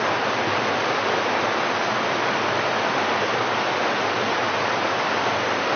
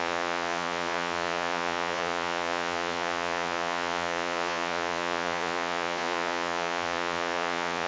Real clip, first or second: first